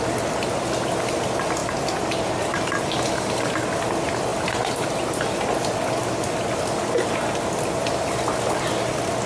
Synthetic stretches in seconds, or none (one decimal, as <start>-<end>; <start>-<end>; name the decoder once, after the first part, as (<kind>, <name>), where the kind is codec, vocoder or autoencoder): none